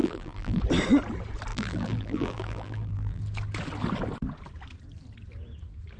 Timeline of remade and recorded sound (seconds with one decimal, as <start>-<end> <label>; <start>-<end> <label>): 0.0-0.6 remade; 0.6-1.5 recorded; 1.5-3.2 remade; 3.2-6.0 recorded